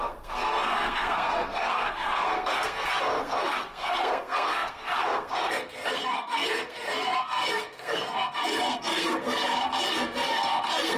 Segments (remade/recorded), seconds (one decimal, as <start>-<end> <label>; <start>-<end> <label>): 0.0-11.0 remade

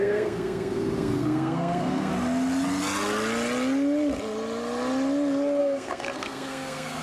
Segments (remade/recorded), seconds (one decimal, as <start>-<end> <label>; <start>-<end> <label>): 0.0-2.1 remade; 2.1-5.6 recorded; 5.6-7.0 remade

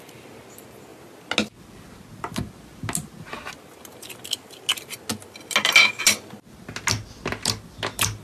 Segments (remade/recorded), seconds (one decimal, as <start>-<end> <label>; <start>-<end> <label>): 0.0-8.2 recorded

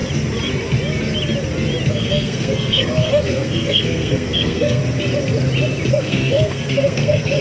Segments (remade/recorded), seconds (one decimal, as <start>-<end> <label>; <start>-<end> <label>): 0.0-1.9 recorded; 1.9-4.8 remade; 4.8-5.9 recorded; 5.9-7.4 remade

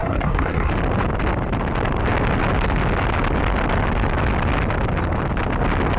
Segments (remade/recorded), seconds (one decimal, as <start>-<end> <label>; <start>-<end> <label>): 0.0-0.7 remade; 0.7-6.0 recorded